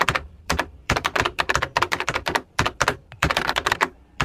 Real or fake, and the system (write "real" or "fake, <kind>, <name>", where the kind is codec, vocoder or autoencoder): fake, vocoder, BigVGAN v2